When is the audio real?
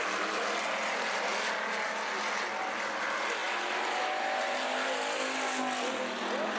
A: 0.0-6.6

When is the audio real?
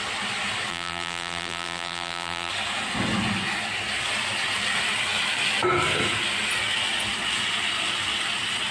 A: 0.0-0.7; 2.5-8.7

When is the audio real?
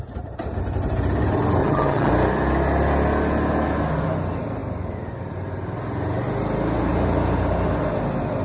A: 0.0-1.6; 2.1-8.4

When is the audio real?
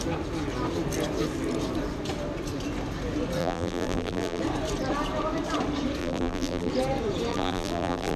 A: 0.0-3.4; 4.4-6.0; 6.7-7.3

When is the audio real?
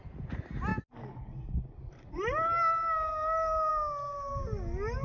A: 0.0-5.0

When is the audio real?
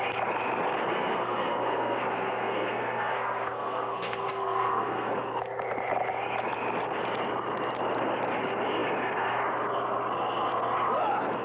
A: 0.0-0.9; 5.1-11.4